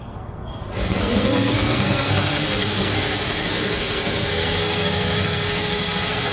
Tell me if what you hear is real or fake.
fake